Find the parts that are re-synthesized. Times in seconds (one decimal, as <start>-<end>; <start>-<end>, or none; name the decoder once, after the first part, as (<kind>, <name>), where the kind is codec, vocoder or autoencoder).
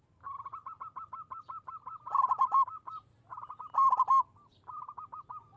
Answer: 0.6-3.2 (vocoder, BigVGAN v2)